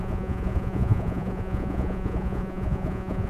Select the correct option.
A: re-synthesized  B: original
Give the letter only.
A